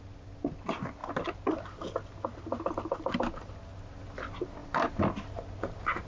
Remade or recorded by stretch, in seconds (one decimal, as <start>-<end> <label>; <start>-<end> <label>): 0.0-6.1 recorded